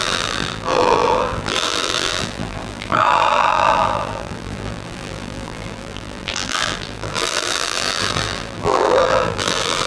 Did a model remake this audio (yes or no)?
yes